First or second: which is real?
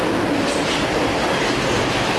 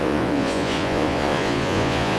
first